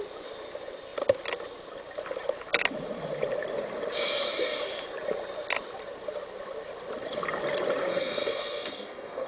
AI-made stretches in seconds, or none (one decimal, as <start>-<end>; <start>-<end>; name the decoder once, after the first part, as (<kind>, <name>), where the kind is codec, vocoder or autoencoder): 7.9-9.3 (codec, SNAC)